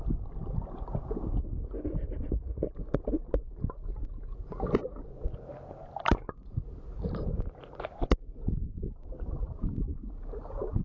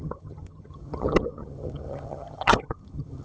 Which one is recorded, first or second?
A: first